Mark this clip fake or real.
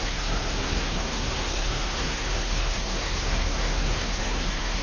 fake